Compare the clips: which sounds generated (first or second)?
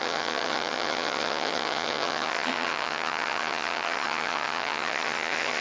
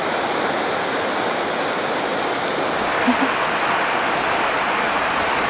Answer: first